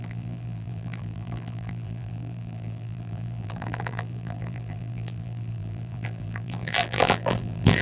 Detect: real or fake fake